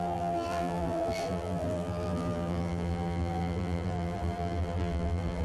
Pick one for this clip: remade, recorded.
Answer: remade